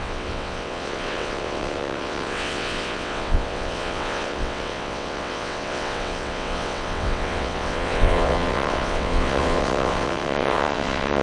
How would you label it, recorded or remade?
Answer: remade